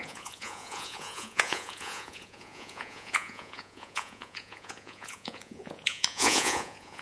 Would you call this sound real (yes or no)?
no